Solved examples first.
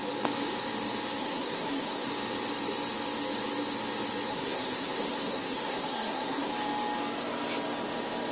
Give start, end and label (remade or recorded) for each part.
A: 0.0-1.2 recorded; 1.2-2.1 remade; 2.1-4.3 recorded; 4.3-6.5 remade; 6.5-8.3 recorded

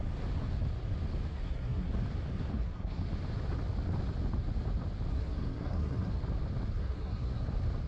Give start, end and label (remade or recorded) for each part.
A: 0.0-1.3 recorded; 1.3-1.9 remade; 1.9-2.5 recorded; 2.5-3.0 remade; 3.0-5.1 recorded; 5.1-6.2 remade; 6.2-6.8 recorded; 6.8-7.5 remade; 7.5-7.9 recorded

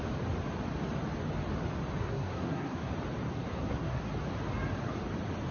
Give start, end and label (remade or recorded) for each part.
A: 0.0-2.0 recorded; 2.0-2.9 remade; 2.9-3.3 recorded; 3.3-4.0 remade; 4.0-5.5 recorded

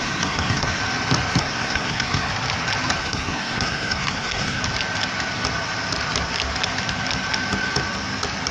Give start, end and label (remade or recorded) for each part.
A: 0.0-0.8 remade; 0.8-1.4 recorded; 1.4-2.3 remade; 2.3-3.0 recorded; 3.0-4.6 remade; 4.6-8.5 recorded

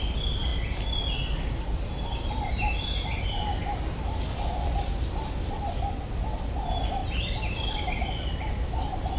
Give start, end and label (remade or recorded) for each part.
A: 0.0-9.2 recorded

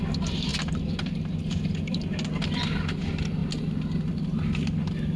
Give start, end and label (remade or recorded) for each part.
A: 0.0-5.2 recorded

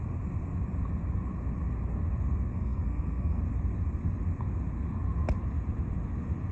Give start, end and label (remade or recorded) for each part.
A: 0.0-2.5 recorded; 2.5-3.4 remade; 3.4-6.5 recorded

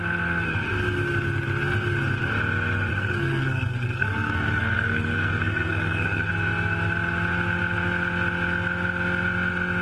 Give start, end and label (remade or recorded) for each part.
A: 0.0-2.9 recorded; 2.9-6.3 remade; 6.3-9.8 recorded